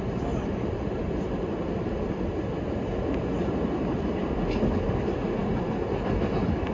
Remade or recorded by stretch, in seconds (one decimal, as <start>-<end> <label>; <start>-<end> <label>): 0.0-6.7 recorded

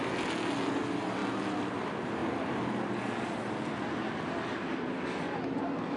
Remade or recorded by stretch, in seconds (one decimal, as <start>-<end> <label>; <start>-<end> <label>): 0.0-6.0 recorded

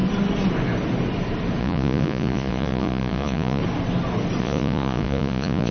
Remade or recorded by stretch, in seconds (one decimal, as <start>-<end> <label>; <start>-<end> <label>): 0.0-1.6 recorded; 1.6-3.6 remade; 3.6-4.4 recorded; 4.4-5.7 remade

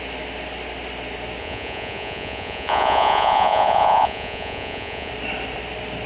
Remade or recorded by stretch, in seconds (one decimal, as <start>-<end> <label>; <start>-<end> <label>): 0.0-1.4 recorded; 1.4-5.1 remade; 5.1-6.1 recorded